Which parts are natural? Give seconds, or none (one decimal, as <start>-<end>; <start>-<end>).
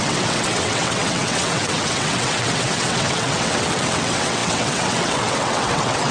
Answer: none